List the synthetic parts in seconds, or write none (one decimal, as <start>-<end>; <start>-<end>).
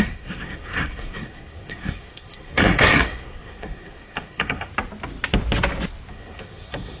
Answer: 0.0-4.7; 6.1-7.0